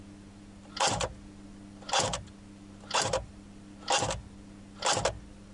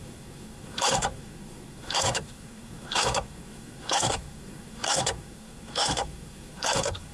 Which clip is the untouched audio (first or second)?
first